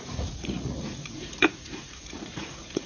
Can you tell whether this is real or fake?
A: fake